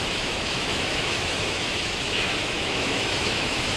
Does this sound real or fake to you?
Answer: fake